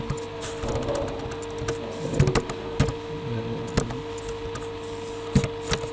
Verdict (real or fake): real